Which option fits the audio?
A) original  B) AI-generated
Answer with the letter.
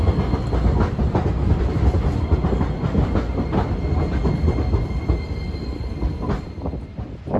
A